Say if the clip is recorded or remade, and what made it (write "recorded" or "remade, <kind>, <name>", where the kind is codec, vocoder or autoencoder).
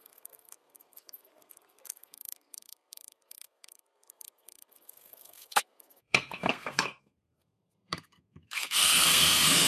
remade, codec, SNAC